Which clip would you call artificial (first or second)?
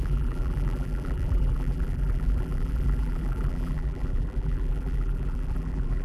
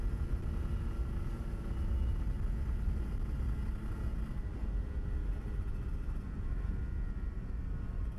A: first